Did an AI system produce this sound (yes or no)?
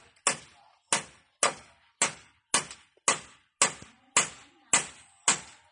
no